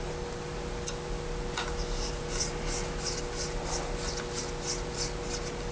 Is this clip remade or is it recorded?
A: recorded